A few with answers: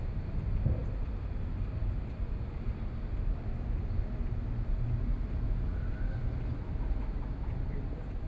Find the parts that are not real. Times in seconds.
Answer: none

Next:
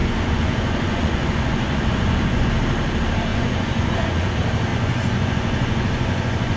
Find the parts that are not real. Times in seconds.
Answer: 0.0-2.5 (vocoder, Vocos); 3.3-4.3; 4.7-6.6

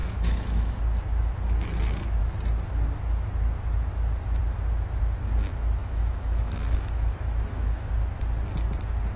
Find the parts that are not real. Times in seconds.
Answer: 0.0-0.8 (autoencoder, DAC-VAE); 5.8-7.9

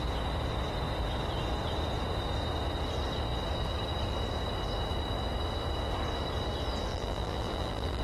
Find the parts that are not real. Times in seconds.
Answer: 6.9-8.0 (vocoder, BigVGAN v2)

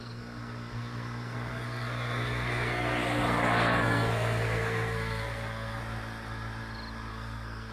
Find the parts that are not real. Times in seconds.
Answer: 0.0-5.8 (codec, SNAC); 7.1-7.7

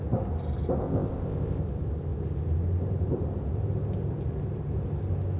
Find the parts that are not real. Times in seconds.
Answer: 0.8-1.6 (codec, ZipCodec)

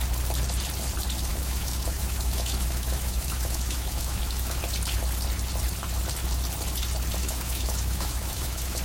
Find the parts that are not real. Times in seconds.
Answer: 1.3-4.6 (autoencoder, DAC-VAE); 7.2-8.8

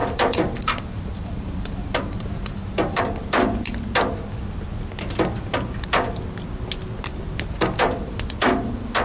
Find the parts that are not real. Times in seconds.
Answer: 0.0-3.0 (vocoder, BigVGAN v2)